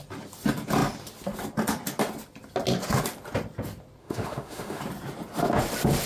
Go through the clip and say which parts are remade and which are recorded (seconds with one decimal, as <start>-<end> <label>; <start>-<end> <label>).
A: 0.0-4.0 recorded; 4.0-4.8 remade; 4.8-6.1 recorded